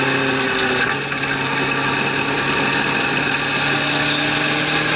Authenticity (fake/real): real